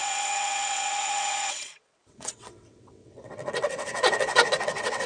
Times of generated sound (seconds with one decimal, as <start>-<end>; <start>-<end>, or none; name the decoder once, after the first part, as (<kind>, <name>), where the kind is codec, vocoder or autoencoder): 0.0-5.1 (vocoder, WaveNeXt)